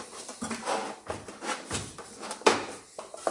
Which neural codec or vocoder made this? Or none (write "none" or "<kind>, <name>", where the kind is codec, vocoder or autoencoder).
none